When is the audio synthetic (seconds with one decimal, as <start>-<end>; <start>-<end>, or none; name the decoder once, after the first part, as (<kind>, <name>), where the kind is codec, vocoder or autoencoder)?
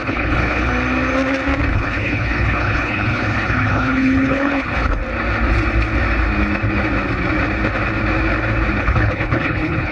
0.0-0.7 (codec, HILCodec); 1.7-5.0; 8.8-9.9